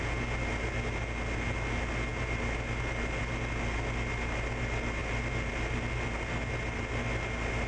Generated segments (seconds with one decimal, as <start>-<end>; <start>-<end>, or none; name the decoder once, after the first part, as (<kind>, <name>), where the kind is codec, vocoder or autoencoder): none